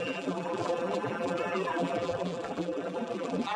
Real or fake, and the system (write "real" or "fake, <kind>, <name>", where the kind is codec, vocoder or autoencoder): fake, vocoder, BigVGAN v2